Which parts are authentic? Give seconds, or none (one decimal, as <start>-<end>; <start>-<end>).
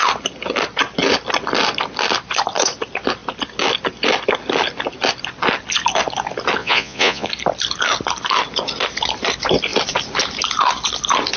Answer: 0.0-6.6; 7.3-11.4